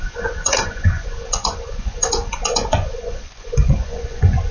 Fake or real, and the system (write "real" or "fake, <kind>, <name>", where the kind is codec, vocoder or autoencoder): fake, vocoder, Vocos